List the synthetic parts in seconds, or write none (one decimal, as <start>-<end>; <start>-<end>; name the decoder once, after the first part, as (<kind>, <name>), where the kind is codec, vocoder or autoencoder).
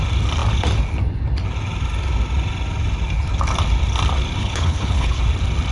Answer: 4.4-5.2 (codec, HILCodec)